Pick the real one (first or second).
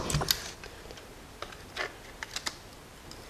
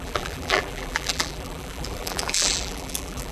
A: first